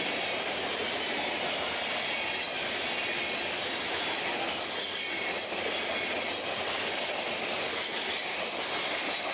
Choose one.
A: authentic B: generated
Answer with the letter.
A